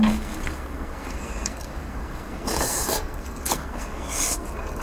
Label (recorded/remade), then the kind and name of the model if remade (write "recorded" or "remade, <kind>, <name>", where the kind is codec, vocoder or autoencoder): remade, codec, SNAC